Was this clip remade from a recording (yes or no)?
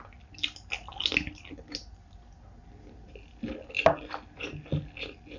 no